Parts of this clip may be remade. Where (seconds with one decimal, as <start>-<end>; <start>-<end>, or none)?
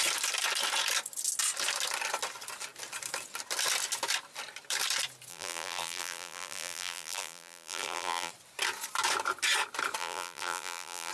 5.3-8.3; 10.0-11.1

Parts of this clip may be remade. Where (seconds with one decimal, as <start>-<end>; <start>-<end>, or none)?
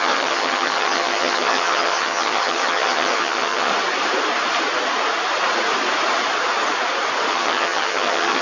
0.0-3.7; 7.3-8.4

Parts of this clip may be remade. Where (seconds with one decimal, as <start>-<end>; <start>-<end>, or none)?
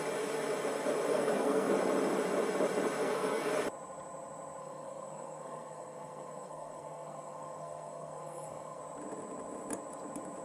1.1-1.7; 3.0-3.5; 4.6-8.8